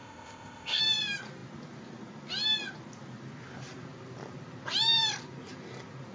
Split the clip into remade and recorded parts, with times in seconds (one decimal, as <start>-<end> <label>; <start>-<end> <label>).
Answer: 0.0-0.8 remade; 0.8-6.1 recorded